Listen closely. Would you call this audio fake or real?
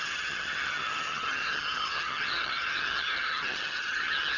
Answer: fake